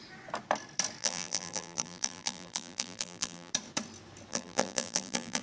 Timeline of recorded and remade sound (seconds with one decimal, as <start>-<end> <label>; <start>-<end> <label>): 0.0-1.0 recorded; 1.0-3.5 remade; 3.5-4.3 recorded; 4.3-5.4 remade